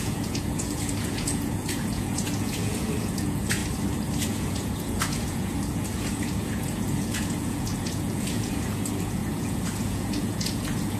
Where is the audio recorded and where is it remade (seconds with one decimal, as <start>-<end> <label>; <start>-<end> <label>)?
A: 0.0-3.6 remade; 3.6-4.3 recorded; 4.3-11.0 remade